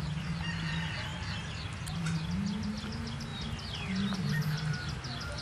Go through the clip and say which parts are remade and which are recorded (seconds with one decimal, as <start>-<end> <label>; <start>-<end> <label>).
0.0-5.4 recorded